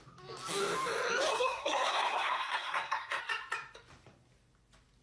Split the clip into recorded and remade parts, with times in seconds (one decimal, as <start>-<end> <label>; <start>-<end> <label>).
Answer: 0.0-1.3 recorded; 1.3-3.2 remade; 3.2-5.0 recorded